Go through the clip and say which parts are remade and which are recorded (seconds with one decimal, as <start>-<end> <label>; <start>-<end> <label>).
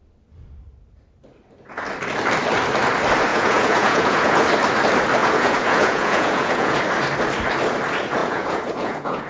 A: 0.0-3.3 recorded; 3.3-4.4 remade; 4.4-5.2 recorded; 5.2-6.8 remade; 6.8-8.2 recorded; 8.2-9.3 remade